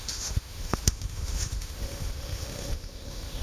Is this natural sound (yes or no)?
no